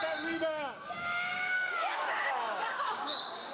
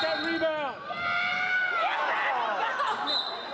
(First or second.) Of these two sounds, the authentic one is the second